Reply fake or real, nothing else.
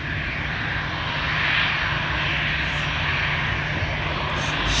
real